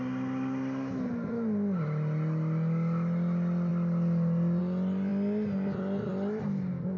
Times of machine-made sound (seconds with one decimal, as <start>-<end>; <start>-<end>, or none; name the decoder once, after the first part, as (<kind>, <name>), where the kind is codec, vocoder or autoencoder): none